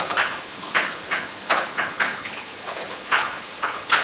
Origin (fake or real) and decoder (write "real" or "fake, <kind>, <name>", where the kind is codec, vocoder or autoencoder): fake, codec, HILCodec